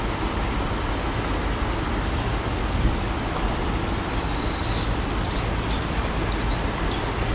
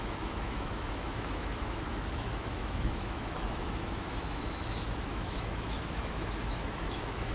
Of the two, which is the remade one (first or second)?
second